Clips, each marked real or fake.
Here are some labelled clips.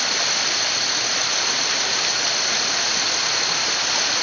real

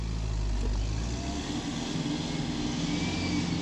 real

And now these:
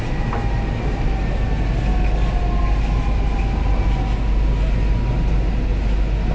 real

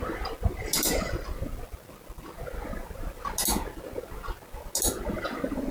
real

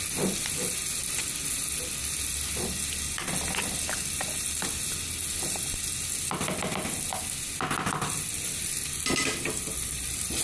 real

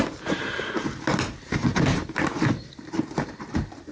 fake